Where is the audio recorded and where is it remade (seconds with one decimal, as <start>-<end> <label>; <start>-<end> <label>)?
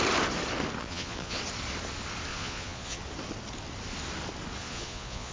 0.0-0.8 recorded; 0.8-1.4 remade; 1.4-2.3 recorded; 2.3-3.0 remade; 3.0-4.6 recorded; 4.6-5.3 remade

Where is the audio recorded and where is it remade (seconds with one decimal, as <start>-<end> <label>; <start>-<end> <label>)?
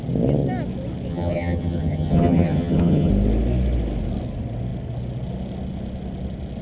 0.0-1.1 recorded; 1.1-3.1 remade; 3.1-6.6 recorded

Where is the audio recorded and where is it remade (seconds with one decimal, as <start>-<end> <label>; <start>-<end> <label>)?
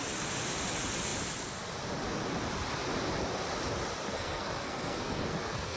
0.0-4.1 recorded; 4.1-5.8 remade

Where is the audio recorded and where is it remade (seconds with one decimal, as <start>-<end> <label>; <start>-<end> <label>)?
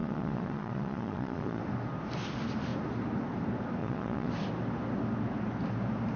0.0-1.6 remade; 1.6-3.8 recorded; 3.8-4.3 remade; 4.3-6.2 recorded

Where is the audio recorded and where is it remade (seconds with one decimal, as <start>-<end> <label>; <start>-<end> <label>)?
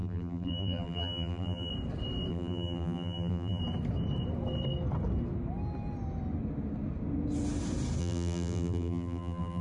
0.0-1.7 remade; 1.7-2.3 recorded; 2.3-3.6 remade; 3.6-8.0 recorded; 8.0-9.6 remade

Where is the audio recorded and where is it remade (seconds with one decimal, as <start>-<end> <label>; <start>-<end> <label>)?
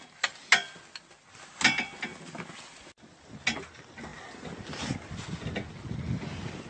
0.0-6.7 recorded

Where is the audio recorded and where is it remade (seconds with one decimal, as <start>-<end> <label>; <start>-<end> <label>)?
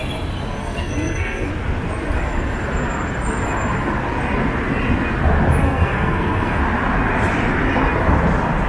0.0-0.6 recorded; 0.6-1.5 remade; 1.5-5.6 recorded; 5.6-6.6 remade; 6.6-8.7 recorded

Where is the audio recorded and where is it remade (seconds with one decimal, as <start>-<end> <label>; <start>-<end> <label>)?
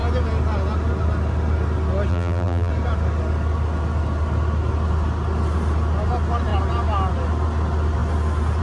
0.0-2.1 recorded; 2.1-2.7 remade; 2.7-8.6 recorded